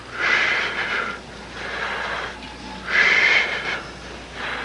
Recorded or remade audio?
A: recorded